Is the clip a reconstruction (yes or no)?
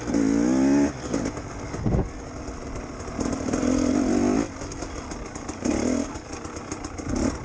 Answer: no